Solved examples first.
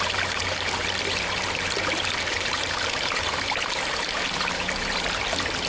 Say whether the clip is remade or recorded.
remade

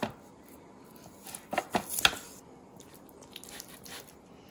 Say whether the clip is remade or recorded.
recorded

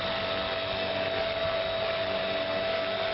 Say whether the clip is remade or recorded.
recorded